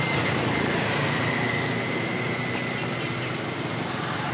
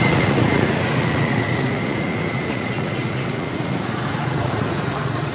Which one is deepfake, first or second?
second